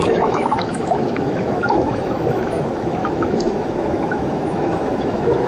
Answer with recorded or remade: remade